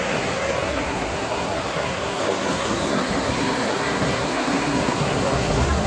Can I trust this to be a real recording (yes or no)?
no